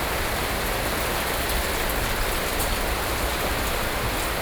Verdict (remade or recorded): recorded